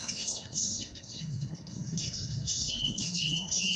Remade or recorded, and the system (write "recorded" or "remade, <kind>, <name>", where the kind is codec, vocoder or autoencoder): remade, codec, SNAC